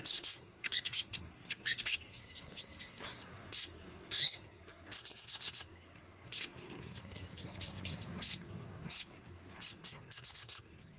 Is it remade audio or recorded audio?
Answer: remade